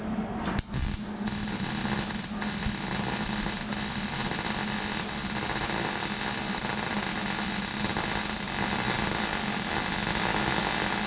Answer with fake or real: real